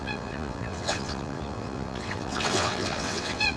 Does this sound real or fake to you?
fake